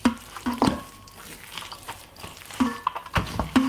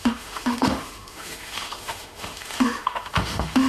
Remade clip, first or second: second